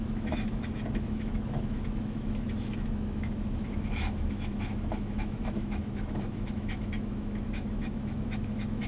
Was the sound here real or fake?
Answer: fake